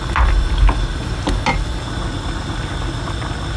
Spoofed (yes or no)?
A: no